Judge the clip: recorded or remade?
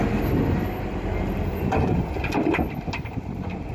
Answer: recorded